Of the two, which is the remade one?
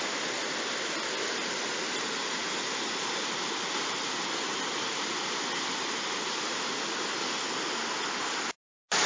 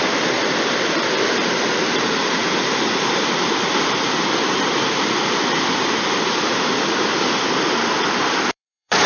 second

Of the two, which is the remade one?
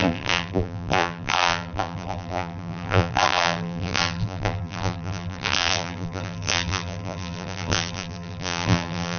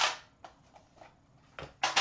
first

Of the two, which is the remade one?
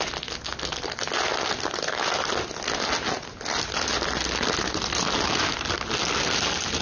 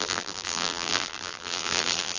second